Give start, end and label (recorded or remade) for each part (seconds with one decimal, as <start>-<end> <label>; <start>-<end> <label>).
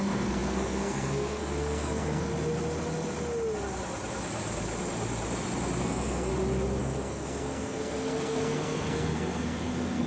0.0-2.3 remade; 2.3-5.8 recorded; 5.8-6.3 remade; 6.3-6.8 recorded; 6.8-10.1 remade